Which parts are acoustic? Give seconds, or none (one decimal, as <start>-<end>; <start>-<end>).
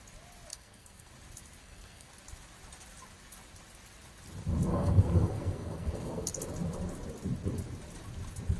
0.0-0.5; 1.1-1.6; 2.1-4.7; 6.3-8.6